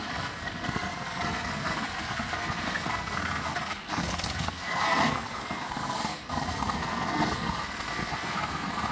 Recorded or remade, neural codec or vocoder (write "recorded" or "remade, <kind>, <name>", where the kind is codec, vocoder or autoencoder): remade, codec, SNAC